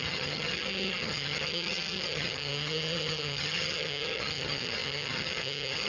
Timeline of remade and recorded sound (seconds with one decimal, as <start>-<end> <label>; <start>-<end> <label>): 0.0-5.9 remade